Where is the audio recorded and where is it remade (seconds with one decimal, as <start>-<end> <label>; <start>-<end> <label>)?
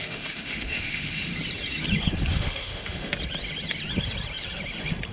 0.0-1.3 remade; 1.3-2.3 recorded; 2.3-3.1 remade; 3.1-5.1 recorded